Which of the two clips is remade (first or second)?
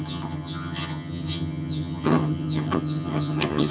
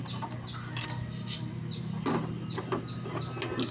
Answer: first